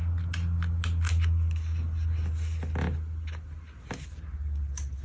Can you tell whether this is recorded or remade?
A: recorded